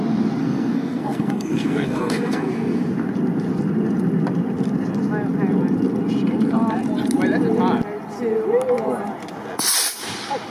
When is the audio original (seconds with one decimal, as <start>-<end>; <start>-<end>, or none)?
0.0-0.4; 2.5-10.5